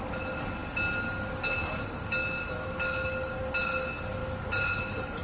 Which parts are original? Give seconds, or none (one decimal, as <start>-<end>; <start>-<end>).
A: 0.0-5.2